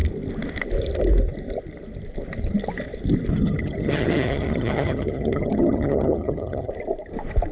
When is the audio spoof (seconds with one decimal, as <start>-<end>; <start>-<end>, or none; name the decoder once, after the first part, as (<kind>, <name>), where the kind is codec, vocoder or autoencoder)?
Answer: 3.3-6.7 (vocoder, HiFi-GAN)